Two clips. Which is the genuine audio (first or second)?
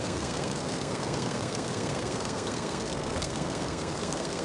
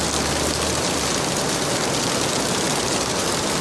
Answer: second